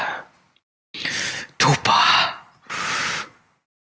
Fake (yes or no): no